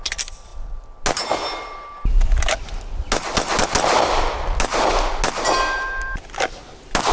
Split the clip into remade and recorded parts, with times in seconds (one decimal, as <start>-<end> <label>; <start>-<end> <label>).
0.0-7.1 recorded